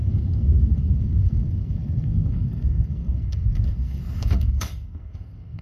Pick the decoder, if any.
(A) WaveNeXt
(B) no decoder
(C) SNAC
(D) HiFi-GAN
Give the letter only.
C